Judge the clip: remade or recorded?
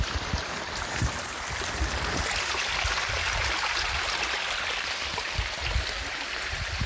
recorded